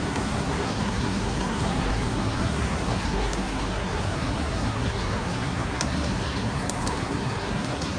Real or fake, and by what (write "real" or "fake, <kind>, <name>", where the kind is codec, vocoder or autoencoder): fake, codec, SNAC